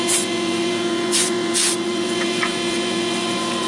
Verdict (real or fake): fake